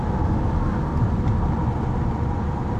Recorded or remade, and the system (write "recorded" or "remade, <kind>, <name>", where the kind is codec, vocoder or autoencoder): recorded